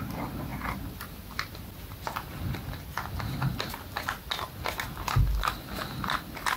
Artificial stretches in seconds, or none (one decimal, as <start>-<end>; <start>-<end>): none